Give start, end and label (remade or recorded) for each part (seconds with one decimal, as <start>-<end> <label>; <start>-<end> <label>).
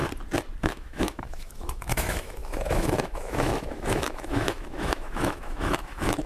0.0-0.6 recorded; 0.6-6.3 remade